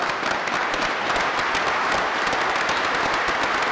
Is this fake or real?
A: real